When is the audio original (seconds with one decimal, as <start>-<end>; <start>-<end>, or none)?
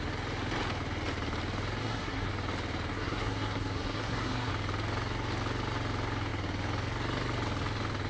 0.0-1.8; 2.3-2.9; 4.5-8.1